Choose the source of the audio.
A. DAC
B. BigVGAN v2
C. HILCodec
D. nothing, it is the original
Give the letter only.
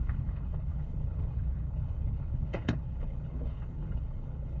C